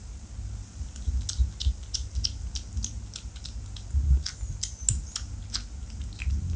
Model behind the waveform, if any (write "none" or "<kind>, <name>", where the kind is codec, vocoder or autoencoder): none